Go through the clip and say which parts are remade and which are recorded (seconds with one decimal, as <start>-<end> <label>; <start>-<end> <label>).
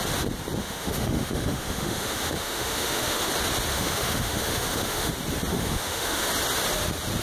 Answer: 0.0-0.6 recorded; 0.6-3.3 remade; 3.3-3.7 recorded; 3.7-5.1 remade; 5.1-5.5 recorded; 5.5-6.3 remade; 6.3-7.2 recorded